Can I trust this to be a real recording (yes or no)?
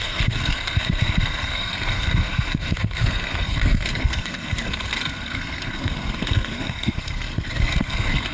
no